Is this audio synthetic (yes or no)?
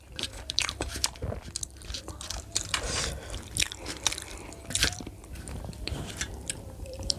yes